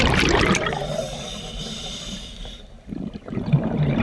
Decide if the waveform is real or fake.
real